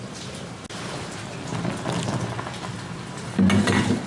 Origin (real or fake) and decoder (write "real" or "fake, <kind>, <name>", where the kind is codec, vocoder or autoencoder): real